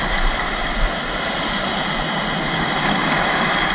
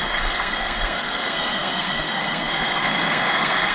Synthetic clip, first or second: second